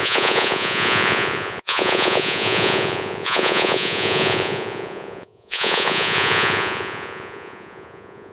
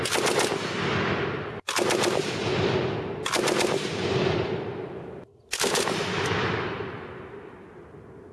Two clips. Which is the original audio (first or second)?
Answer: second